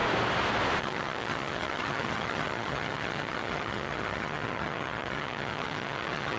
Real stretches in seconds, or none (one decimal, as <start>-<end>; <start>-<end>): 0.0-0.8